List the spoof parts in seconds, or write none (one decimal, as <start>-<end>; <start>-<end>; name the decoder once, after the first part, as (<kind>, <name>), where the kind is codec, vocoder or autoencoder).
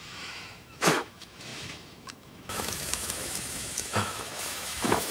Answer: 0.0-5.1 (autoencoder, DAC-VAE)